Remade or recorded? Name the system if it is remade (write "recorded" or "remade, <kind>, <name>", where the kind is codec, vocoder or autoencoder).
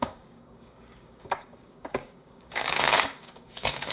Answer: remade, codec, DAC